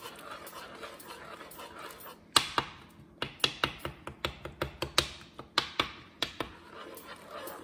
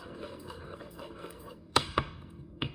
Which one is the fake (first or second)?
second